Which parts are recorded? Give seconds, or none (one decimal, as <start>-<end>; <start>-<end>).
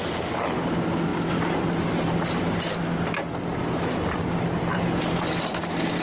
0.0-4.7; 5.3-6.0